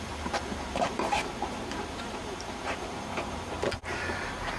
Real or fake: fake